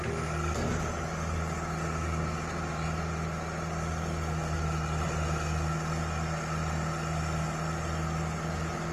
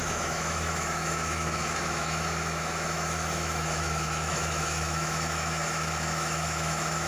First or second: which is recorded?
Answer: first